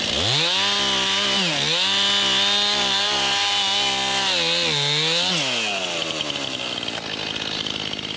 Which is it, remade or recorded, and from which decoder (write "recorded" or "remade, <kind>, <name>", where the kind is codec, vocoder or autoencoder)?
recorded